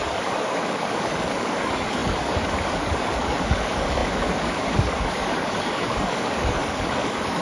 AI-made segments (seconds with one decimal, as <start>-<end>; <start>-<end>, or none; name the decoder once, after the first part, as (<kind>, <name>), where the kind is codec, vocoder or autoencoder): 0.0-7.4 (codec, DAC)